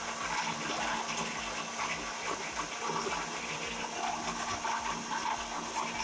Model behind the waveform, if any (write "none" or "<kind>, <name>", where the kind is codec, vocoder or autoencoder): none